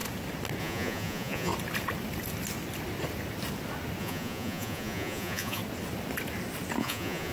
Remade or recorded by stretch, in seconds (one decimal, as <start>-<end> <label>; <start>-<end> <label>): 0.0-0.6 recorded; 0.6-1.5 remade; 1.5-4.0 recorded; 4.0-5.6 remade; 5.6-6.8 recorded; 6.8-7.3 remade

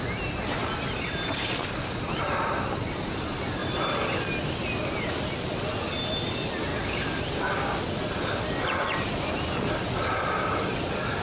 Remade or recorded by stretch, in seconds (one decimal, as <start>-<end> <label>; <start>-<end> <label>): 0.0-3.6 recorded; 3.6-4.2 remade; 4.2-11.2 recorded

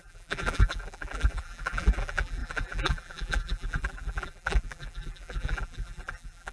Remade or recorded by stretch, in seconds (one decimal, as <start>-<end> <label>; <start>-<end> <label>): 0.0-6.5 remade

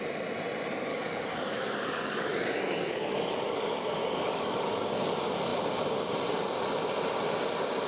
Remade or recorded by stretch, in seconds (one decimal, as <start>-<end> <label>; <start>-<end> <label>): 0.0-0.9 recorded; 0.9-5.1 remade; 5.1-7.9 recorded